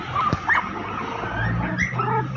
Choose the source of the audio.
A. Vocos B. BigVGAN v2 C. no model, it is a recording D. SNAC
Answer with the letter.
C